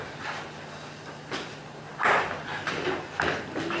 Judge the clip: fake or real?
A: real